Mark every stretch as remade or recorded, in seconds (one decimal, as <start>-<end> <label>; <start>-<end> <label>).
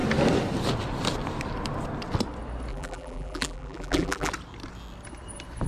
0.0-2.7 recorded; 2.7-4.3 remade; 4.3-5.7 recorded